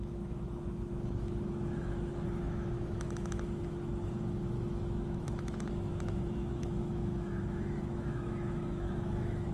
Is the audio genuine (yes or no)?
no